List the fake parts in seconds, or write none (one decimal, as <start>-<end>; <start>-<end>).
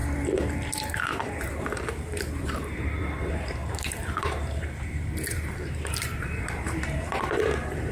0.0-7.9